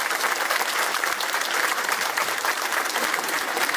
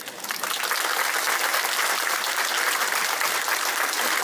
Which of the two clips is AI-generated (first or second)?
first